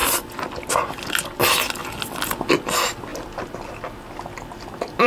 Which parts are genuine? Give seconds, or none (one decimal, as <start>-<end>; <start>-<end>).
0.0-5.1